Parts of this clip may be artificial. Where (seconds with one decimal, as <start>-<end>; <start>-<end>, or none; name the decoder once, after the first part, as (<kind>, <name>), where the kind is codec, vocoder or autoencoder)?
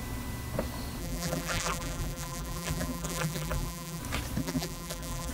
1.0-4.0 (vocoder, BigVGAN v2); 4.4-5.3